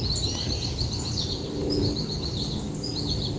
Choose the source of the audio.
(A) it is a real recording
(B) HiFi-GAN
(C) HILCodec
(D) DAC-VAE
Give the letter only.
A